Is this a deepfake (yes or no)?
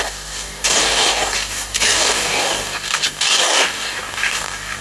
yes